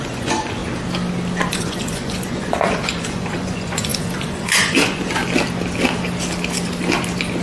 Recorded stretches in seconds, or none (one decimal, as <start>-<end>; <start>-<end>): 0.6-1.5; 5.2-7.4